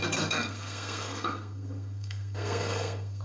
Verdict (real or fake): fake